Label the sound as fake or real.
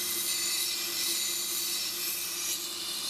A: real